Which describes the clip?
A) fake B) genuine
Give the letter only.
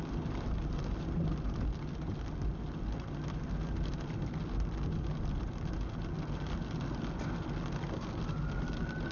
B